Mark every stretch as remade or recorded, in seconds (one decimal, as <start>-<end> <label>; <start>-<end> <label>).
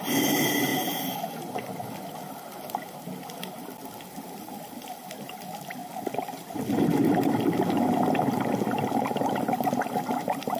0.0-0.7 remade; 0.7-1.5 recorded; 1.5-5.8 remade; 5.8-9.2 recorded; 9.2-10.6 remade